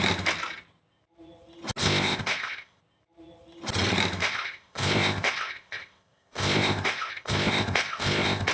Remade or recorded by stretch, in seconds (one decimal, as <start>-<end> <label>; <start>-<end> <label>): 0.0-1.8 recorded; 1.8-2.8 remade; 2.8-4.2 recorded; 4.2-8.5 remade